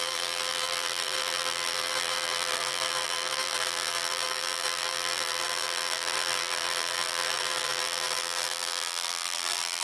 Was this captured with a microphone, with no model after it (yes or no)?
no